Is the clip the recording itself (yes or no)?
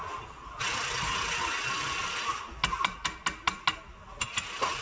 yes